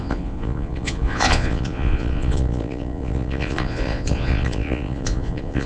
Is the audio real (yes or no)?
no